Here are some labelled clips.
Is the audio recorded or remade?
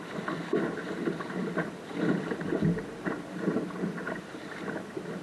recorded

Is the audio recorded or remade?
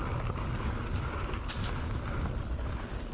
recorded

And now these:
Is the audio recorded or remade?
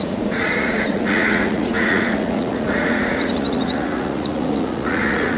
remade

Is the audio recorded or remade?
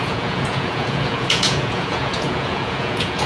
remade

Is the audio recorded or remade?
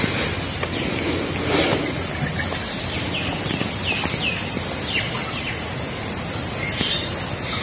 recorded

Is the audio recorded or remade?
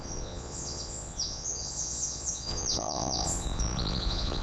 remade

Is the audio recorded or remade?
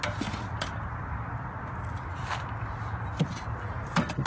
recorded